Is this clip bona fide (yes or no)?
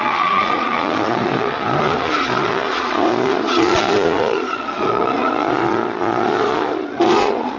no